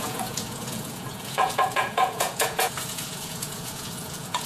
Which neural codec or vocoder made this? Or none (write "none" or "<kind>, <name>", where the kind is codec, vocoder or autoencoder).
vocoder, Vocos